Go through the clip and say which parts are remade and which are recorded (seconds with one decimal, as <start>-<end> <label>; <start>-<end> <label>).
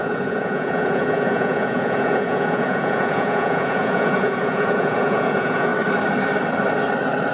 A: 0.0-5.7 remade; 5.7-7.3 recorded